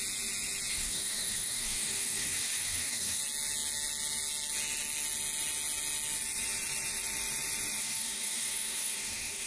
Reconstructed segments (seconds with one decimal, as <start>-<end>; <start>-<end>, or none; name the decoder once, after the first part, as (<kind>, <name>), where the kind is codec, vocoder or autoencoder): 0.7-3.2 (codec, DAC); 7.8-9.5